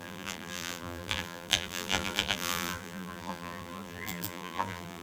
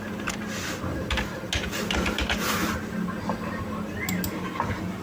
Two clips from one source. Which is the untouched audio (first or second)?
second